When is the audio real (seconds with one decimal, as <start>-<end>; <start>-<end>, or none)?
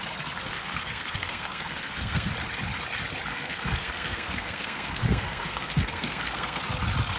0.0-0.5; 2.3-3.3; 6.6-7.2